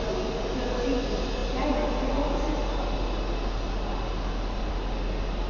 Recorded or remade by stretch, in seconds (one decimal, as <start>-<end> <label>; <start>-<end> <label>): 0.0-5.5 recorded